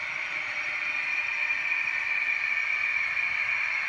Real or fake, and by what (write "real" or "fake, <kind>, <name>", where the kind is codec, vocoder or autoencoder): fake, vocoder, BigVGAN v2